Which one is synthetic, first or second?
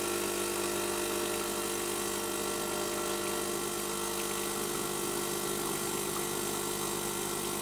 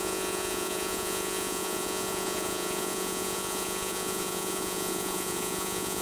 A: second